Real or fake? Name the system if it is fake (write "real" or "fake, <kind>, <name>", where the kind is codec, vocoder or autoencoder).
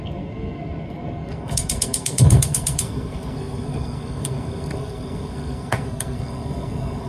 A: fake, codec, SNAC